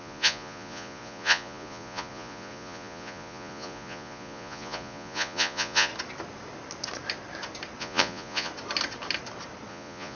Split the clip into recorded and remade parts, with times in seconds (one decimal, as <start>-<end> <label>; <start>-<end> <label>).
0.0-5.9 remade; 5.9-7.8 recorded; 7.8-8.5 remade; 8.5-9.7 recorded; 9.7-10.1 remade